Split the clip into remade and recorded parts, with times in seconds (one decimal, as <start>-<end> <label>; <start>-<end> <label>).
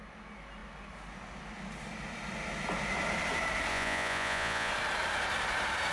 0.0-3.7 recorded; 3.7-4.7 remade; 4.7-5.9 recorded